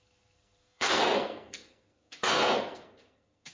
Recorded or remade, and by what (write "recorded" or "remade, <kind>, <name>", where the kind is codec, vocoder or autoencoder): remade, codec, SNAC